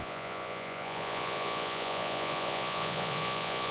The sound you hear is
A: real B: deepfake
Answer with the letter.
B